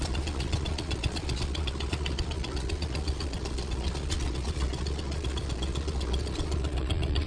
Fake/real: fake